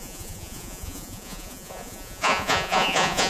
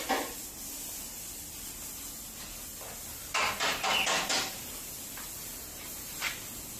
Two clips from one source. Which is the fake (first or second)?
first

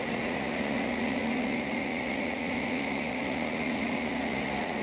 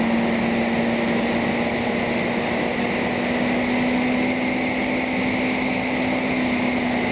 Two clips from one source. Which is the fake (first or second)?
first